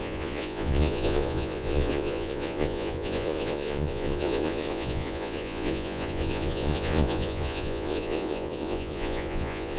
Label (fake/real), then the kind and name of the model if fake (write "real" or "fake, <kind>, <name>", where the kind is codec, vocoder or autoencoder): fake, vocoder, Vocos